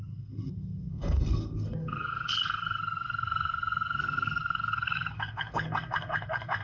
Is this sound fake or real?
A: fake